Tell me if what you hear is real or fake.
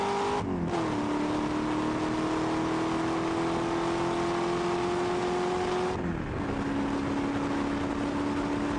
real